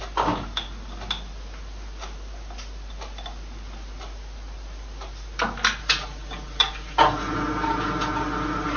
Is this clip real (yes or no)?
yes